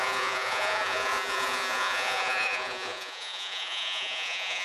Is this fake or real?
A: fake